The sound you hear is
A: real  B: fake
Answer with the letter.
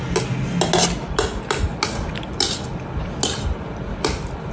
A